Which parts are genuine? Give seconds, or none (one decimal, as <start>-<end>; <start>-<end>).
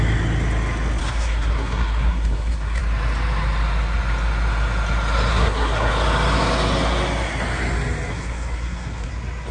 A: 0.0-1.0; 2.8-5.3; 5.9-8.1; 9.1-9.5